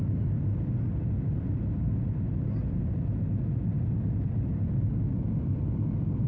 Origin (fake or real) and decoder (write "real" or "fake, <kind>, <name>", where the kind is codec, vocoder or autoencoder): real